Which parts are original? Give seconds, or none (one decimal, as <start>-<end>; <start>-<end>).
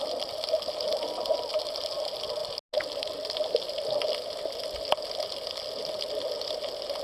0.0-7.0